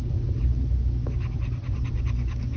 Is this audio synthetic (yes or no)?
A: no